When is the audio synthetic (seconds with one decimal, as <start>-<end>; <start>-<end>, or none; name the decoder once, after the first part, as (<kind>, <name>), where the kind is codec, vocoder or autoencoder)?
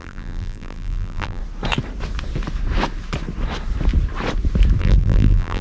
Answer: 0.0-1.4 (vocoder, BigVGAN v2); 4.8-5.6